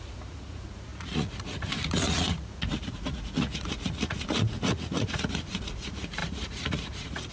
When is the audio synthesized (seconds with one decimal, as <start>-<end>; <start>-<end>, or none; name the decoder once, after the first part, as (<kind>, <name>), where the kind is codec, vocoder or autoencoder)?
0.0-7.3 (vocoder, Vocos)

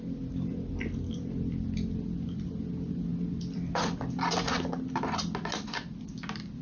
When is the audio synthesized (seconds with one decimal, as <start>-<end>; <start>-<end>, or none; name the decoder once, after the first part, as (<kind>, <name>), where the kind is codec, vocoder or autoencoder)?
none

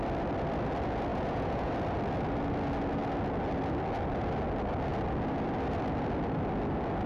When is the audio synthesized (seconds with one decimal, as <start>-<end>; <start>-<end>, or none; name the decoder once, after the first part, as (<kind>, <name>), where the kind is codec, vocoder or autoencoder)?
1.1-1.7 (vocoder, Vocos)

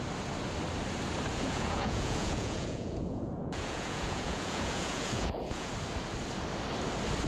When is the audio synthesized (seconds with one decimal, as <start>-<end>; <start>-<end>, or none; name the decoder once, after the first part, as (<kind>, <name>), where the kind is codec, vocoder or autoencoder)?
1.3-5.7 (vocoder, Vocos)